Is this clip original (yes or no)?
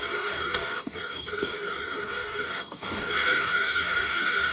no